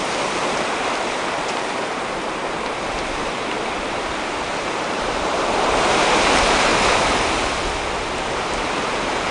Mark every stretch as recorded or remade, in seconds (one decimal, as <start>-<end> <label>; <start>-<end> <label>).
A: 0.0-6.7 remade; 6.7-7.9 recorded; 7.9-9.3 remade